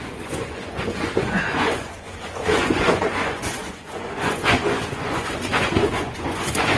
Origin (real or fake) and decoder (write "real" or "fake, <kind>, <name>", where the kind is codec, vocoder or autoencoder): fake, vocoder, Vocos